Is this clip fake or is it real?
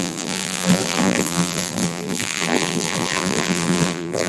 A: fake